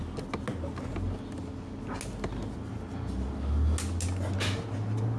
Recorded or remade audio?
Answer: recorded